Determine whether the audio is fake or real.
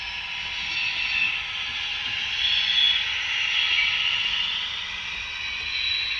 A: real